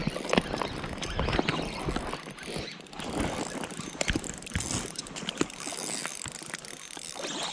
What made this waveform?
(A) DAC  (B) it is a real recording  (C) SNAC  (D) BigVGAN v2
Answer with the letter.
B